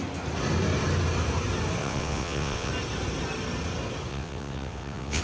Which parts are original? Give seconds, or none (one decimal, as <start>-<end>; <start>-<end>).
0.0-1.8; 2.7-4.1